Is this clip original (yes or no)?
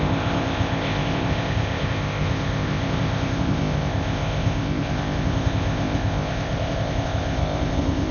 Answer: no